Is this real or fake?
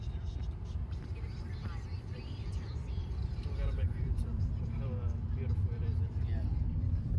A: fake